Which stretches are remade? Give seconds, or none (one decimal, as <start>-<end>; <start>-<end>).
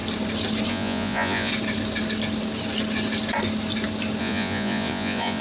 0.7-1.5; 4.2-5.4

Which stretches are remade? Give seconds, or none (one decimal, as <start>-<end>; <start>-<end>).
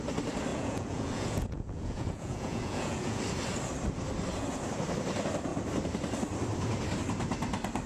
0.5-3.2